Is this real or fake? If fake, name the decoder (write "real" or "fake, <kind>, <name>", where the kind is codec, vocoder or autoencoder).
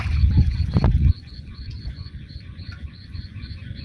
fake, vocoder, Vocos